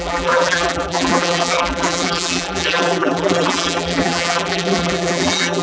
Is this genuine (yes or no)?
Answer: no